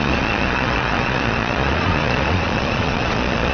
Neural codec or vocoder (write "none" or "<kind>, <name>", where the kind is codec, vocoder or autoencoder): vocoder, Vocos